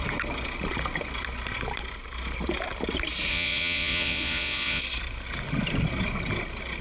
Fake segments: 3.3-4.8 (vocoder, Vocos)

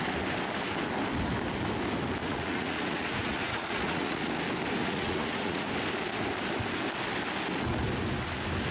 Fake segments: 2.2-4.3 (vocoder, Vocos); 4.8-5.7

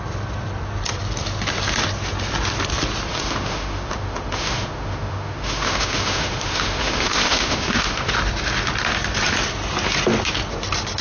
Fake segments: 3.1-8.1 (autoencoder, DAC-VAE)

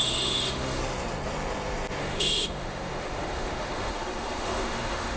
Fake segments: 0.0-0.8 (autoencoder, DAC-VAE); 2.0-5.2

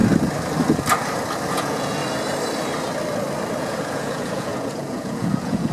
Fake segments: 1.5-2.0 (vocoder, Vocos); 3.6-5.7

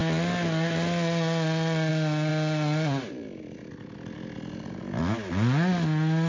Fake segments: none